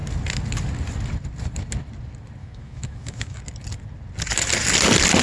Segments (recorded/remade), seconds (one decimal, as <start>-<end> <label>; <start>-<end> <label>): 0.0-2.4 recorded; 2.4-3.4 remade; 3.4-5.2 recorded